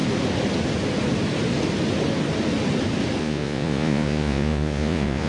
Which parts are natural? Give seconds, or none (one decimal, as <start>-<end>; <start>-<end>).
0.0-3.2